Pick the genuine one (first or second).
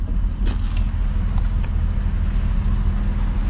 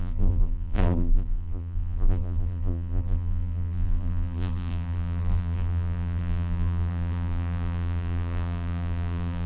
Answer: first